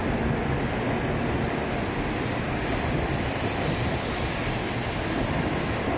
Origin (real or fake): real